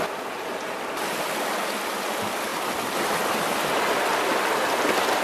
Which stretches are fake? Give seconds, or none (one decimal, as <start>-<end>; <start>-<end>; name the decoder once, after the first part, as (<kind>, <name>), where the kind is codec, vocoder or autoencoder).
none